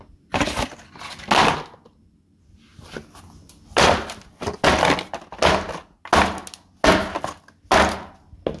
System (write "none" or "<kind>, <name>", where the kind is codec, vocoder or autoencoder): none